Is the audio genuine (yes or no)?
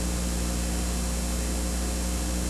yes